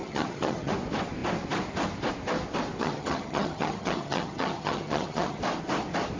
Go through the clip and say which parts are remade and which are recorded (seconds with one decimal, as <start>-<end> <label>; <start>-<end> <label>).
0.0-0.7 remade; 0.7-2.8 recorded; 2.8-5.4 remade; 5.4-6.2 recorded